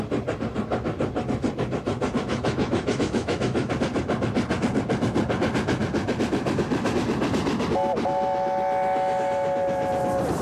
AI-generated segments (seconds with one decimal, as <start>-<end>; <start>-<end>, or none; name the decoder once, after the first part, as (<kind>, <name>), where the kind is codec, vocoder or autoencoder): 2.3-3.7 (autoencoder, DAC-VAE)